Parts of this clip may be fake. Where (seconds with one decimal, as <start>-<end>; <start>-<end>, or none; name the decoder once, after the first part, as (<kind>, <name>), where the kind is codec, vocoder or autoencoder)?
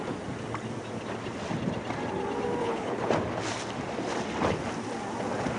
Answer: 2.6-3.1 (codec, HILCodec)